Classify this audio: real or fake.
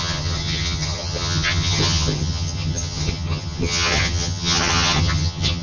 fake